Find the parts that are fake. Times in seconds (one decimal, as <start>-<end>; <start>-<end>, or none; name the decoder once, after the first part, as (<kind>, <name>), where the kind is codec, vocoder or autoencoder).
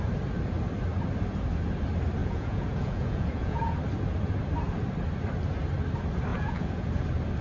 2.2-3.7 (vocoder, Vocos); 6.3-6.9